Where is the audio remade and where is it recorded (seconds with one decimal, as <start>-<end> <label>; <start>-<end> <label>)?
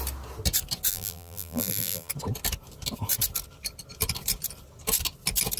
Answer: 0.0-0.9 recorded; 0.9-2.1 remade; 2.1-5.6 recorded